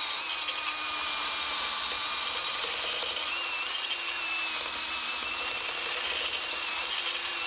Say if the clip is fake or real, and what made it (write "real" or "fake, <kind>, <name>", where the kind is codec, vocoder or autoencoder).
real